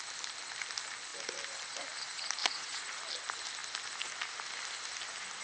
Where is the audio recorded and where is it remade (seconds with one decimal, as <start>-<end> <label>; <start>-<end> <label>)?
0.0-2.4 recorded; 2.4-3.0 remade; 3.0-5.4 recorded